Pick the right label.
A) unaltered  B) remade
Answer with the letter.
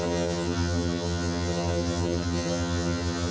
B